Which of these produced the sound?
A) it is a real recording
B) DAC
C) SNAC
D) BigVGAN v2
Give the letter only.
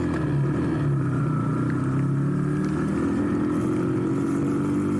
A